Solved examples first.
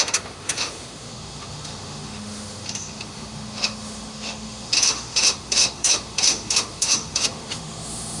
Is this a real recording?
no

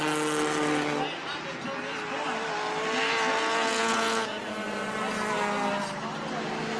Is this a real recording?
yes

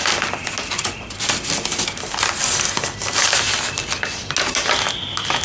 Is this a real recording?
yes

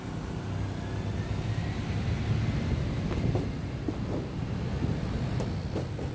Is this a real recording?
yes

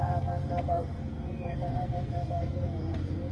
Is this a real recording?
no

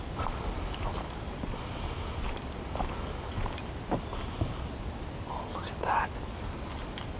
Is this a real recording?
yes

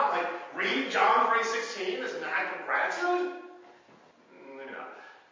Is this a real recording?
yes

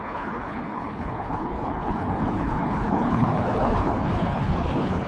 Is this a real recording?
no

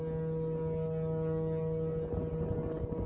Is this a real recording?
yes